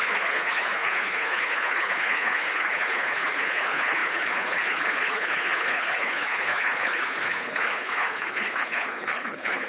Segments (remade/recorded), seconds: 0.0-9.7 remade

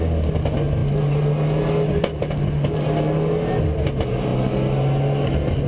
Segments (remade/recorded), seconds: 0.0-5.7 recorded

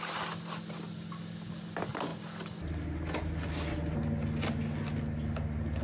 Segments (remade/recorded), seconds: 0.0-5.8 recorded

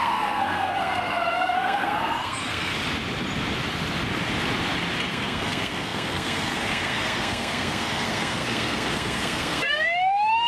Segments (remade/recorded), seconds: 0.0-2.7 remade; 2.7-5.1 recorded; 5.1-10.5 remade

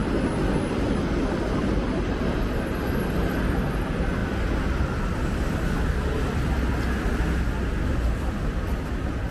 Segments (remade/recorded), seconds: 0.0-9.3 recorded

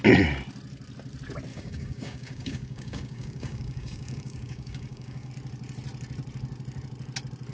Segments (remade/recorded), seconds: 0.0-1.5 recorded; 1.5-5.3 remade; 5.3-7.5 recorded